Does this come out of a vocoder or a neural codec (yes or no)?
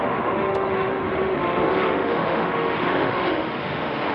yes